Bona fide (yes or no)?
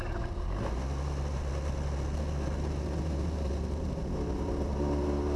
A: yes